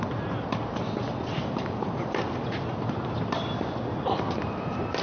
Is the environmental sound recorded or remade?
recorded